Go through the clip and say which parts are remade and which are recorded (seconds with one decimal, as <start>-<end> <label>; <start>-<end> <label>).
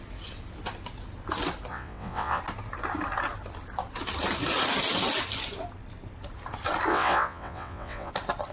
0.0-1.7 recorded; 1.7-2.4 remade; 2.4-6.9 recorded; 6.9-8.1 remade; 8.1-8.5 recorded